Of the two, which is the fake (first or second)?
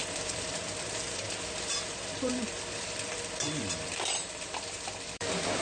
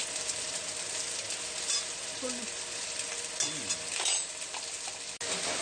first